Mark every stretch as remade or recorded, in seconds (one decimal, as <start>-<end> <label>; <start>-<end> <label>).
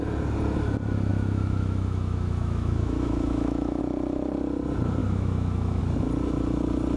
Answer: 0.0-1.1 recorded; 1.1-3.8 remade; 3.8-5.0 recorded; 5.0-5.8 remade; 5.8-7.0 recorded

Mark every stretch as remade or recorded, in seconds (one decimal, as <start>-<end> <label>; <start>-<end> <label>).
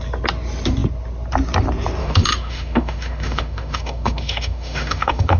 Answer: 0.0-2.0 recorded; 2.0-5.4 remade